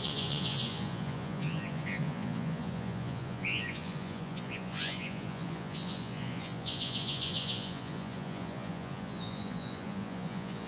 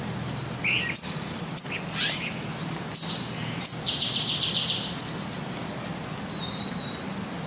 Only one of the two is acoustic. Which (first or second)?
second